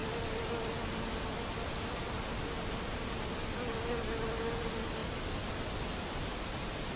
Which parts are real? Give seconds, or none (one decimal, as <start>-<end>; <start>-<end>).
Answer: 0.0-7.0